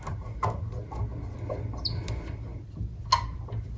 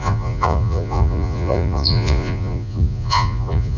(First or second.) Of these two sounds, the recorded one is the first